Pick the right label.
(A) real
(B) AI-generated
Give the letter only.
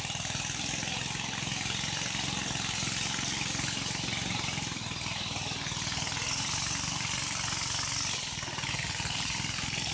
A